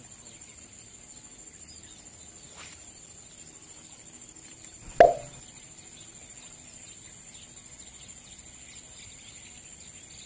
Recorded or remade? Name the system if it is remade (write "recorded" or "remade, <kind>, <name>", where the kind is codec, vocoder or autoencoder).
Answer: recorded